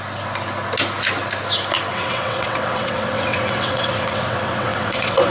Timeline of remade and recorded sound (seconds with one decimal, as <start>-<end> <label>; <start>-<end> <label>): 0.0-1.9 recorded; 1.9-5.3 remade